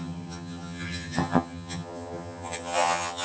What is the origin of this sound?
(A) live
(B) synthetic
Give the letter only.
B